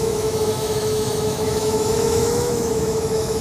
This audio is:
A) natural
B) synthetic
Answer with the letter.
B